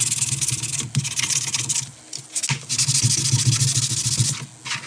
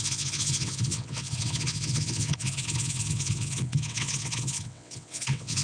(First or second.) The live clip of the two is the first